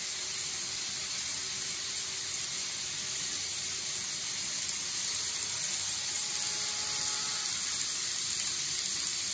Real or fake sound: real